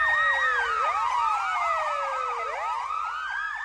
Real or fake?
real